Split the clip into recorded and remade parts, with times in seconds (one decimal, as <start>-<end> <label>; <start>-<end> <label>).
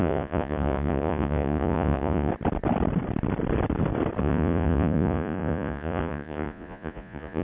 0.0-2.3 remade; 2.3-4.2 recorded; 4.2-7.4 remade